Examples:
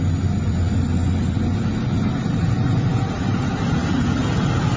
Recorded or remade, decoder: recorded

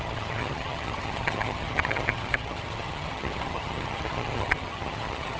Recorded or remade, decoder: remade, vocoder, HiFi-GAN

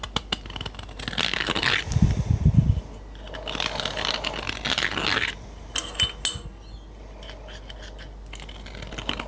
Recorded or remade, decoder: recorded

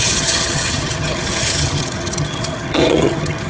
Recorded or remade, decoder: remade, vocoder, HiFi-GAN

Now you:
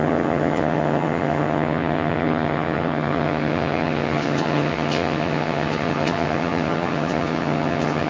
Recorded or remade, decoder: remade, vocoder, HiFi-GAN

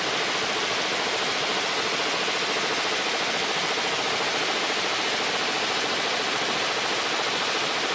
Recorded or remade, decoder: recorded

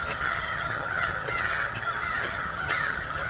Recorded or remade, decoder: remade, vocoder, HiFi-GAN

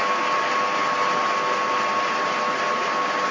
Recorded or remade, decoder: recorded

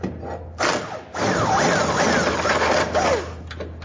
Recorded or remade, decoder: recorded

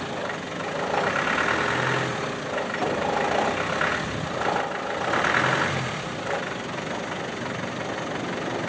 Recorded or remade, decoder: recorded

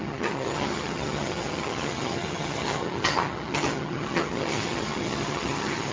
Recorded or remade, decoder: remade, vocoder, HiFi-GAN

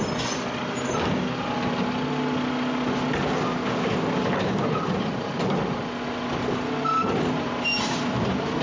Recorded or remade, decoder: recorded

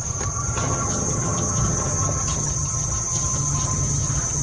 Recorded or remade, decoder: remade, vocoder, HiFi-GAN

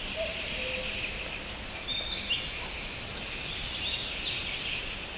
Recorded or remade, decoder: recorded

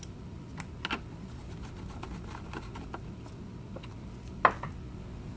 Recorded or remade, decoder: recorded